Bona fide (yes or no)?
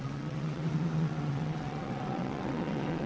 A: no